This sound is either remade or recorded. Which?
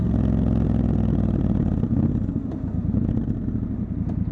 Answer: recorded